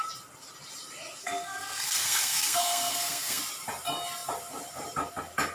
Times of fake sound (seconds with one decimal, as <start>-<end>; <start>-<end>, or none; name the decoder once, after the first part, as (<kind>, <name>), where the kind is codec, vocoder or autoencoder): 1.2-3.4 (codec, SNAC)